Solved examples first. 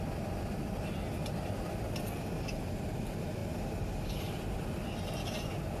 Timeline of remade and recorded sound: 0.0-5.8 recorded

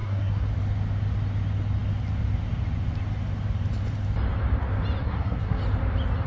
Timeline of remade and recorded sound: 0.0-0.5 remade; 0.5-5.0 recorded; 5.0-5.6 remade; 5.6-6.3 recorded

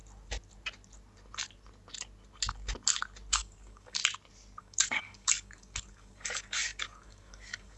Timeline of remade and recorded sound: 0.0-3.3 recorded; 3.3-4.0 remade; 4.0-4.6 recorded; 4.6-7.8 remade